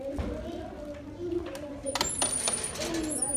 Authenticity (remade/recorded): recorded